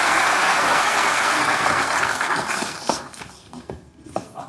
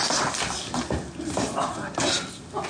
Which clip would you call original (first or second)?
second